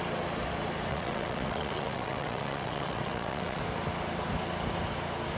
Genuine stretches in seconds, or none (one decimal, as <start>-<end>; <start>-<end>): 0.0-0.9; 3.6-5.4